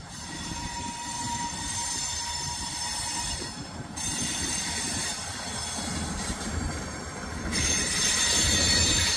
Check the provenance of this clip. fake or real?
fake